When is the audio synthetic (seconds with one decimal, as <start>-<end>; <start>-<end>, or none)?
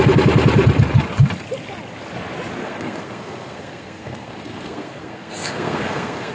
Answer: 2.6-6.3